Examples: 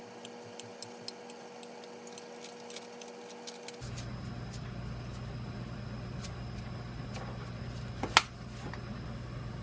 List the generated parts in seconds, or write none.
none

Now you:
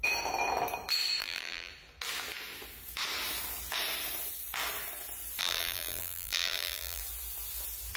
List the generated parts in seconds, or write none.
1.2-1.7 (vocoder, BigVGAN v2); 5.4-7.0

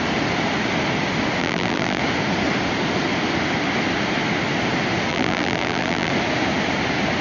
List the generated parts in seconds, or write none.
1.4-2.0 (vocoder, BigVGAN v2); 5.1-6.1

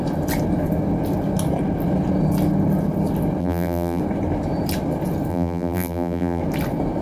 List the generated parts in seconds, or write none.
3.4-4.0 (vocoder, BigVGAN v2); 5.3-6.4

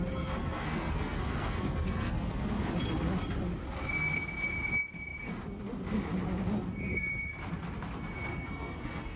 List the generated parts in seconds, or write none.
0.4-2.5 (codec, SNAC); 8.3-9.2